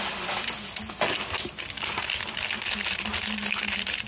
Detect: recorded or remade recorded